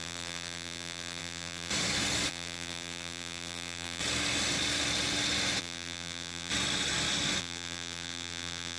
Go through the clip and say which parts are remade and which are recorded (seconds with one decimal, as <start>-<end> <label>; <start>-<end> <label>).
0.0-1.7 remade; 1.7-2.3 recorded; 2.3-4.0 remade; 4.0-5.6 recorded; 5.6-6.5 remade; 6.5-7.4 recorded; 7.4-8.8 remade